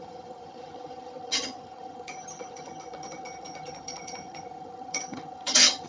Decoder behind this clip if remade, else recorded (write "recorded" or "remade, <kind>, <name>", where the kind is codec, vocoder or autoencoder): remade, vocoder, HiFi-GAN